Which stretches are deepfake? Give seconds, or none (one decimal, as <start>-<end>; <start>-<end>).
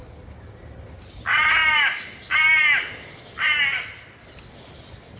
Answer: none